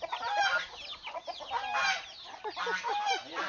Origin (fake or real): real